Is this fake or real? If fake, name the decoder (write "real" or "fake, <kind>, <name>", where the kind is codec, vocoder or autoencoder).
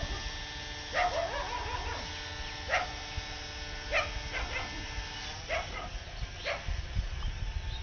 real